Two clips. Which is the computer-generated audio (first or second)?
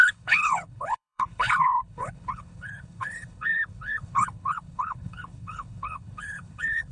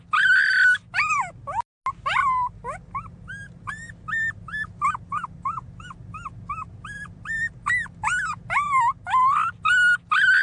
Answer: first